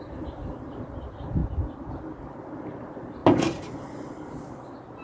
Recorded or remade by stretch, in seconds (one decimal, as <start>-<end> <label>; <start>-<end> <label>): 0.0-5.0 recorded